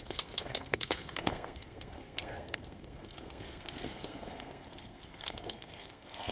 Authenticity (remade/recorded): remade